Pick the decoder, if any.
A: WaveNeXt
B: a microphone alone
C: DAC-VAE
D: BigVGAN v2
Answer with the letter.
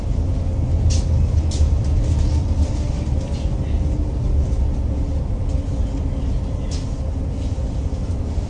B